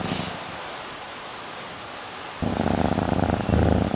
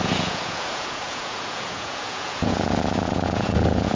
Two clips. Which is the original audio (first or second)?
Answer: first